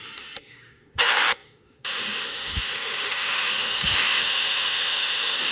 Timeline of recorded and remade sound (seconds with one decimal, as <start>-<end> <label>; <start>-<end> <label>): 0.0-5.5 remade